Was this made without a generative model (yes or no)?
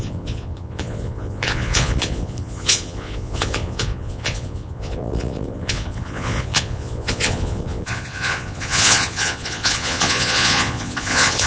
no